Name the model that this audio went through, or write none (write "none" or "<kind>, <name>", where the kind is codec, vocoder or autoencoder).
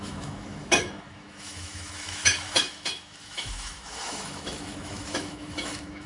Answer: autoencoder, DAC-VAE